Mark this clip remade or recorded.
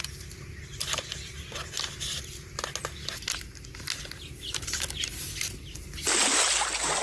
recorded